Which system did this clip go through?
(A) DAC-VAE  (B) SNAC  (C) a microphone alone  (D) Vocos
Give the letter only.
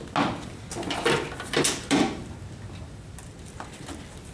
C